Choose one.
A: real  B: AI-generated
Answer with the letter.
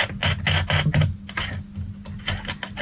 A